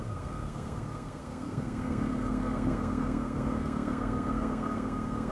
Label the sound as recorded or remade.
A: remade